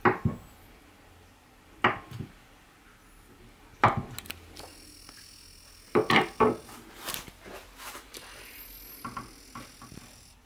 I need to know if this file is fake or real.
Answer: real